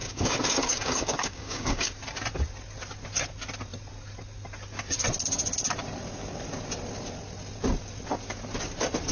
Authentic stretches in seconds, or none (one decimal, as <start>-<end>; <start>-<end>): 1.9-9.1